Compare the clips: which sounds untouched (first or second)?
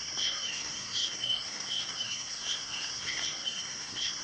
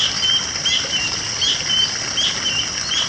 second